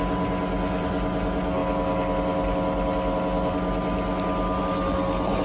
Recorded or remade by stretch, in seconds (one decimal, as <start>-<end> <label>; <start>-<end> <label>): 0.0-5.4 recorded